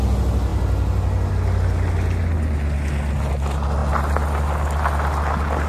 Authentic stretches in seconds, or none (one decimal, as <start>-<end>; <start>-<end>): 0.0-5.7